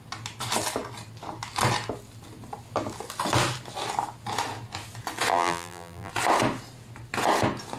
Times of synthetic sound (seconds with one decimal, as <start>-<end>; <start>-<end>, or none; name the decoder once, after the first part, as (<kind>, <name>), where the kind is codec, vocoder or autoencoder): 5.3-6.1 (vocoder, BigVGAN v2)